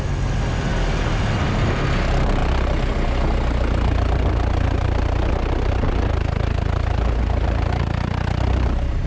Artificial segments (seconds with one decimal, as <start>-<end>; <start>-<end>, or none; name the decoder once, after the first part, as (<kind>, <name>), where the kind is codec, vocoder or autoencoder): none